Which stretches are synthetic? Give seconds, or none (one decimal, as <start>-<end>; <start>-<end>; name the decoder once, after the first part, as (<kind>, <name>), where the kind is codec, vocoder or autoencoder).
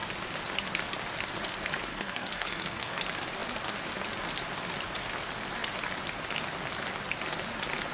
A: 1.9-3.0 (codec, SNAC)